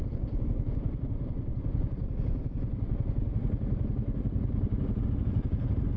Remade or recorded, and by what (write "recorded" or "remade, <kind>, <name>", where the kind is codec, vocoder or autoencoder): recorded